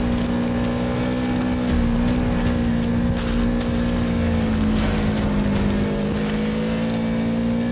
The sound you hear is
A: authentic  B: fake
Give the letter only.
A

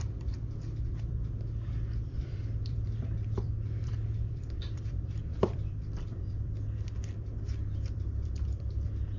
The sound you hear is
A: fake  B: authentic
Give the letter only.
A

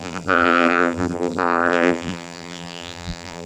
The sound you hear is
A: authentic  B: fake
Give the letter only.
B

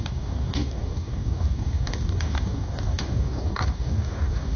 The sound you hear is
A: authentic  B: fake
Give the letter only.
B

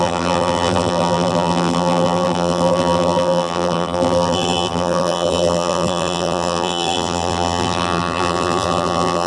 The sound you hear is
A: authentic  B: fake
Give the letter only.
B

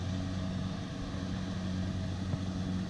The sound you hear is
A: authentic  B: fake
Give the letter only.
A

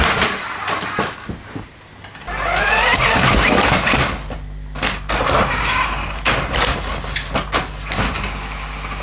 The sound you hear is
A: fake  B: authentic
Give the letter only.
B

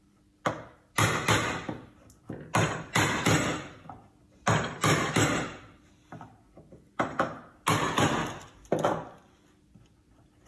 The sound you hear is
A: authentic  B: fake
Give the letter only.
A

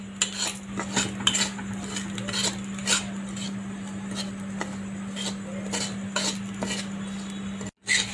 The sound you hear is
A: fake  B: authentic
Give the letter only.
B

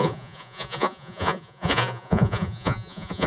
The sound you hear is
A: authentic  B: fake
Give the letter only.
B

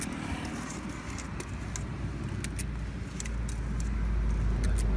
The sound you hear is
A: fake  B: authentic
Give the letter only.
B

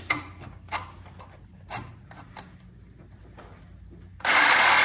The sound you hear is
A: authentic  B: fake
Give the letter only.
A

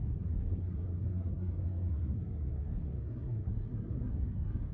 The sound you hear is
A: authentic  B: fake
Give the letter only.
B